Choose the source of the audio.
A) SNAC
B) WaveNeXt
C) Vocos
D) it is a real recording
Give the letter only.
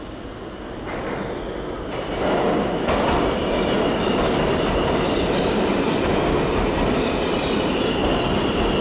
D